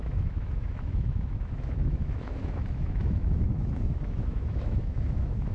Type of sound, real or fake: fake